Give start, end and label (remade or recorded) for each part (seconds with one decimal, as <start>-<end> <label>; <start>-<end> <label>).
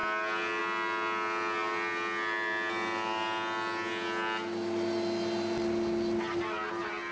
0.0-7.1 recorded